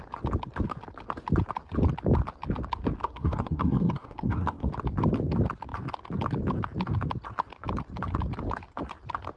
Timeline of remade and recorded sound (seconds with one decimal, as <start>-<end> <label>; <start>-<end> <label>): 0.0-3.0 recorded; 3.0-4.7 remade; 4.7-9.4 recorded